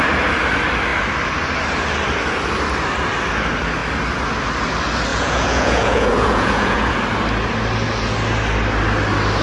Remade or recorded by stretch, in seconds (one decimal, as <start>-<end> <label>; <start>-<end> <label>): 0.0-5.1 recorded; 5.1-6.9 remade; 6.9-9.4 recorded